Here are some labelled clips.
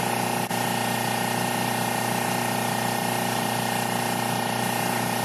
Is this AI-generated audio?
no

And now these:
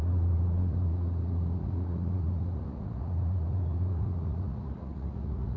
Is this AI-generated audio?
yes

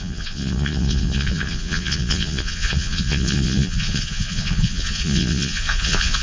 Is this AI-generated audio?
yes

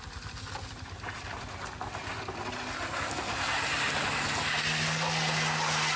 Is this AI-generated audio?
no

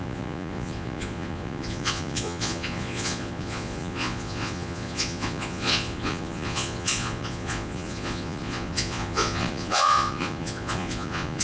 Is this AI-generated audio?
yes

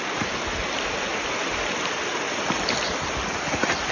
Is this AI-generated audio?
no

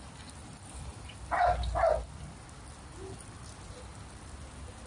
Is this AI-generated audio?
no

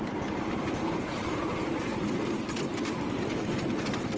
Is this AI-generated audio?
no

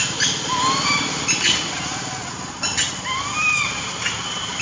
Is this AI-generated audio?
no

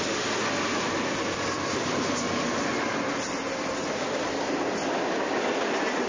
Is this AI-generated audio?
no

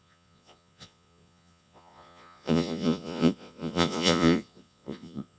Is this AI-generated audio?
yes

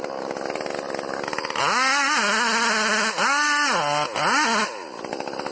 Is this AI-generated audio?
no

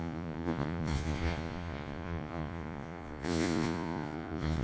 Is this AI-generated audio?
yes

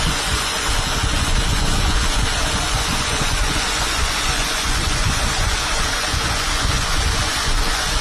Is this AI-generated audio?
yes